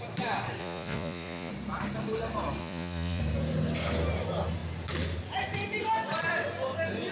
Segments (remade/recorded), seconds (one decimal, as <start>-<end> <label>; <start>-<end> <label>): 0.0-0.6 recorded; 0.6-1.5 remade; 1.5-2.6 recorded; 2.6-3.2 remade; 3.2-7.1 recorded